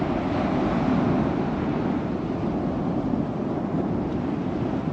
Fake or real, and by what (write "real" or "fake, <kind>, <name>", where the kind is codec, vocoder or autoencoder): real